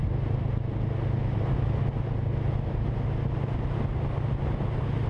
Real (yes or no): yes